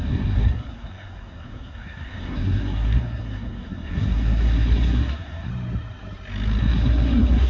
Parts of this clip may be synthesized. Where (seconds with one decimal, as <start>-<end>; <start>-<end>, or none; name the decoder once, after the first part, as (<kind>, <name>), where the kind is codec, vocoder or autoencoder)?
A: 0.0-5.5 (codec, SNAC); 6.6-7.5